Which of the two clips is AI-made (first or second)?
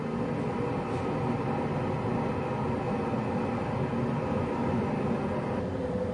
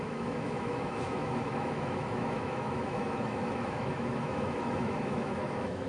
second